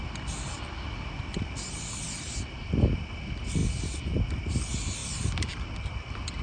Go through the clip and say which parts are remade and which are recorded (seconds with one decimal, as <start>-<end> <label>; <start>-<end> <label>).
0.0-6.4 recorded

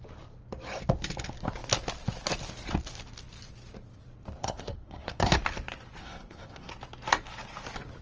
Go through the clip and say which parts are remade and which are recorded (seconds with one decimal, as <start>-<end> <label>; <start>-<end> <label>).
0.0-4.4 recorded; 4.4-5.4 remade; 5.4-6.0 recorded; 6.0-6.7 remade; 6.7-8.0 recorded

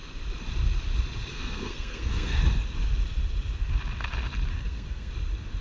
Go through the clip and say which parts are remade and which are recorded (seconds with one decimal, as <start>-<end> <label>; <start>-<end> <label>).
0.0-1.3 recorded; 1.3-2.4 remade; 2.4-4.5 recorded; 4.5-5.1 remade; 5.1-5.6 recorded